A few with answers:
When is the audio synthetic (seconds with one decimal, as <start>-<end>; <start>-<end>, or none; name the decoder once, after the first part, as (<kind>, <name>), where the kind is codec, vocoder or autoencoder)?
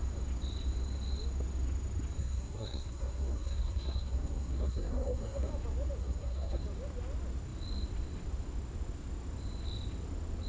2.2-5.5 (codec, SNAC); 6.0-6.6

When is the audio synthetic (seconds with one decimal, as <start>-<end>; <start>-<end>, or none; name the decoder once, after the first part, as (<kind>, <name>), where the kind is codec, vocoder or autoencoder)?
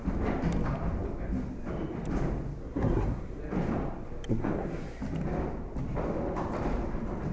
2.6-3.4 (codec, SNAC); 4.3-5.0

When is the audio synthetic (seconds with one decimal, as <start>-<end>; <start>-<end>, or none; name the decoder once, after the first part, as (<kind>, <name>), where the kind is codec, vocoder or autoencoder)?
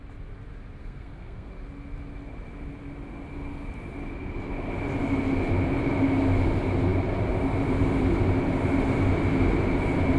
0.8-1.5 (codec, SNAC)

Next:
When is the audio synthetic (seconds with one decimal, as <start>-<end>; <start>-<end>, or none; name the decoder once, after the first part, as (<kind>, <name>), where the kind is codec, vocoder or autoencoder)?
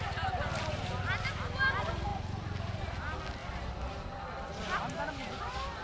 none